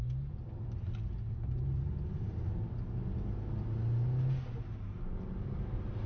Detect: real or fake real